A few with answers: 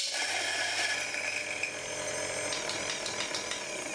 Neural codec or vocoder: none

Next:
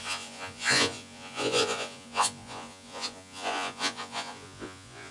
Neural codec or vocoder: vocoder, Vocos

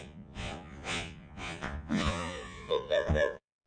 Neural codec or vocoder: vocoder, Vocos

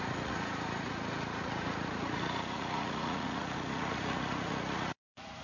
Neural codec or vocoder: vocoder, Vocos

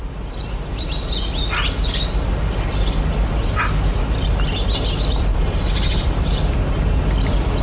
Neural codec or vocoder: none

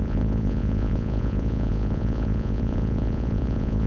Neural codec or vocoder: vocoder, Vocos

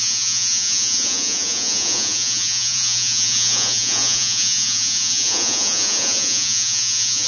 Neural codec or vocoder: vocoder, Vocos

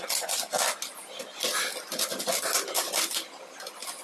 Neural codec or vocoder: none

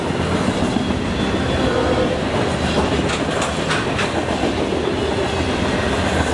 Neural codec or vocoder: none